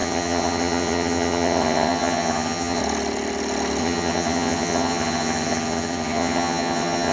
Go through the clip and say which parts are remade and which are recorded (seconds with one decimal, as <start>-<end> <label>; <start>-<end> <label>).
0.0-2.8 remade; 2.8-3.8 recorded; 3.8-7.1 remade